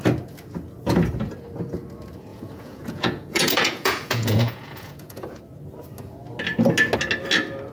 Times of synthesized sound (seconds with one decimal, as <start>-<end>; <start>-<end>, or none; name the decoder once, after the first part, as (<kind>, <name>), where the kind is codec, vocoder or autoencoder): 2.3-5.4 (vocoder, Vocos)